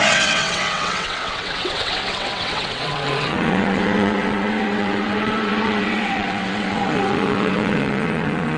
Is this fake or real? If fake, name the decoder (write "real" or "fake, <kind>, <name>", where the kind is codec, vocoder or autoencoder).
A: fake, vocoder, WaveNeXt